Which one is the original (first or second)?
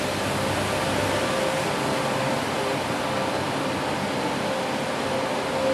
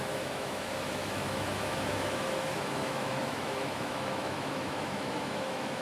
first